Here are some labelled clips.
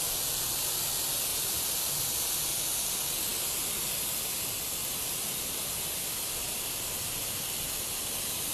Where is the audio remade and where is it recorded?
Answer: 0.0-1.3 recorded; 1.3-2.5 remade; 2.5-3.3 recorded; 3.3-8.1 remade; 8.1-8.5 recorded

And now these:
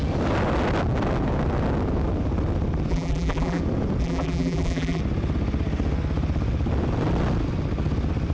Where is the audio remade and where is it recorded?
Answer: 0.0-2.9 recorded; 2.9-3.6 remade; 3.6-4.0 recorded; 4.0-5.0 remade; 5.0-8.3 recorded

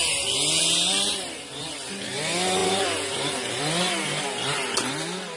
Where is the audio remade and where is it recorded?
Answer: 0.0-1.1 recorded; 1.1-2.1 remade; 2.1-2.6 recorded; 2.6-3.6 remade; 3.6-5.4 recorded

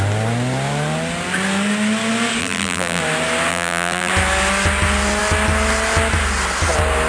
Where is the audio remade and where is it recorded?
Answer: 0.0-2.4 recorded; 2.4-3.0 remade; 3.0-3.5 recorded; 3.5-4.1 remade; 4.1-7.1 recorded

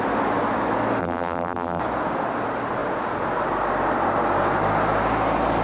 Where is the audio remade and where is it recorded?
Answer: 0.0-1.0 recorded; 1.0-1.8 remade; 1.8-5.6 recorded

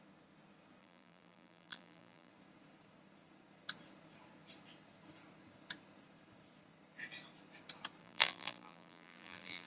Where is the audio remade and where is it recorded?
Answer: 0.0-0.8 recorded; 0.8-2.3 remade; 2.3-8.0 recorded; 8.0-9.7 remade

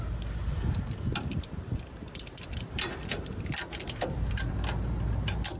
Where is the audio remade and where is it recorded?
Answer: 0.0-1.1 recorded; 1.1-4.5 remade; 4.5-5.6 recorded